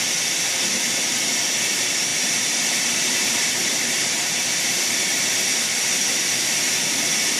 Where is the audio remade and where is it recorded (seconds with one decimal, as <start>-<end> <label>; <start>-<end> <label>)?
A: 0.0-2.1 recorded; 2.1-5.9 remade; 5.9-7.4 recorded